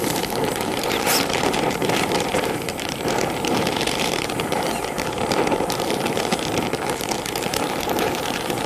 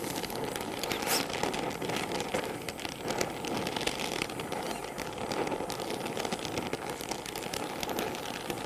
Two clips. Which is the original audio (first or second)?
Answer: second